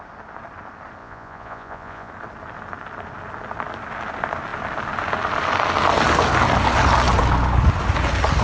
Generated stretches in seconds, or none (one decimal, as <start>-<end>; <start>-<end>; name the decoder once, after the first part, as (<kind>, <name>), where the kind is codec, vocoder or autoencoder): 1.0-2.1 (vocoder, Vocos)